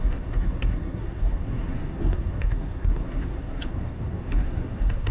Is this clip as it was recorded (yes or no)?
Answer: no